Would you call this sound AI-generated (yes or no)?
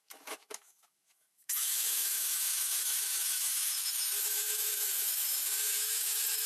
yes